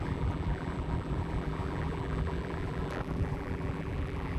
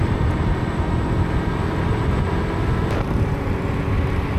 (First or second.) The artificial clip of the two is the first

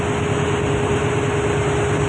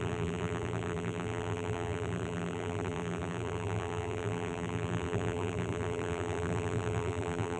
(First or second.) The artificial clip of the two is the second